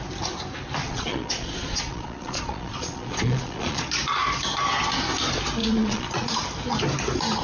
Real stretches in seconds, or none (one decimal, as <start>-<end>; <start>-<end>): 0.0-0.8; 3.9-5.6; 6.3-7.4